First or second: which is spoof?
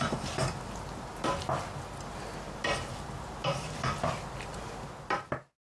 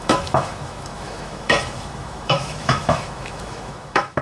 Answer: second